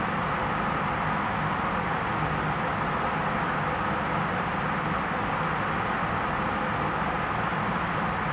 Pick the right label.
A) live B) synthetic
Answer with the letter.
A